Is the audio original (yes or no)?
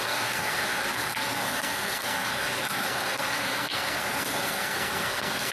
no